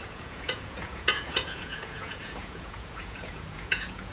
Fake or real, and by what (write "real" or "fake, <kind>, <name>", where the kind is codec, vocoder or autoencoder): fake, vocoder, Vocos